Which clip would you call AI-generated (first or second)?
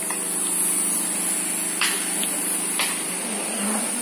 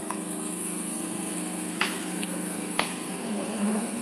second